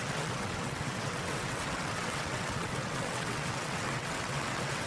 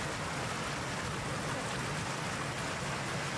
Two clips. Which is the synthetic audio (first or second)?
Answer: first